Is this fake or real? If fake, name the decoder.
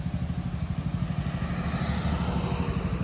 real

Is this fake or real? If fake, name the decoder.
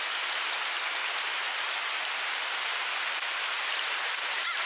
real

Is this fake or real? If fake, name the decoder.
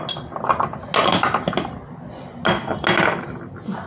real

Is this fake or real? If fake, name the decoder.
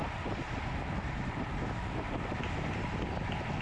real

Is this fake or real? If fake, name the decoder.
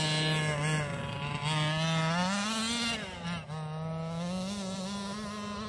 real